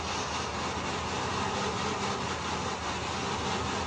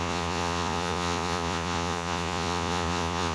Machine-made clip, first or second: second